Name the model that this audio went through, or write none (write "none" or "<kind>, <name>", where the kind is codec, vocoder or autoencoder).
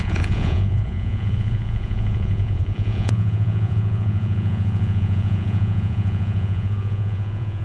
vocoder, Vocos